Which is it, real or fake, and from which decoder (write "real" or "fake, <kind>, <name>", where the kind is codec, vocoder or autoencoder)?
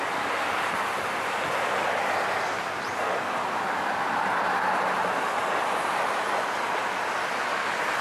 real